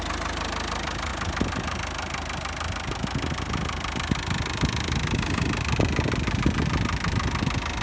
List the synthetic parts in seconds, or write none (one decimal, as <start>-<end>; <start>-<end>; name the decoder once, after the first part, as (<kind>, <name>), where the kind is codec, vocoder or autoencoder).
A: none